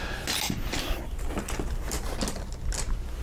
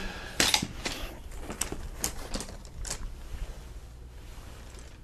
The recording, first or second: first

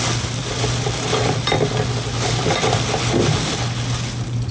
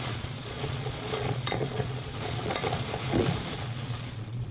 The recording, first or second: first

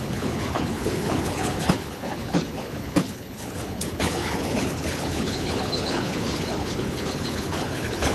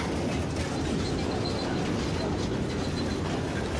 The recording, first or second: second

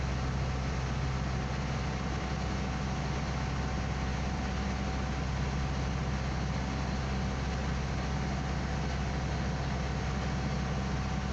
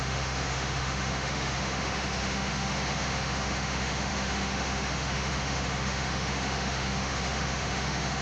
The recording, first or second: first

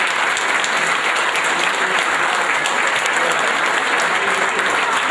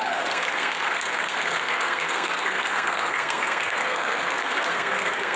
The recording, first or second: first